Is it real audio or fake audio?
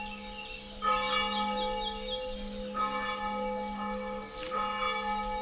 real